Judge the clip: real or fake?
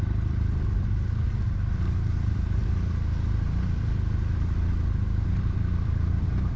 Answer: real